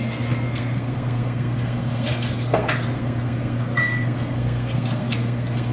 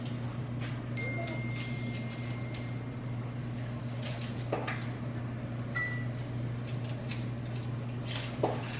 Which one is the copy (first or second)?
first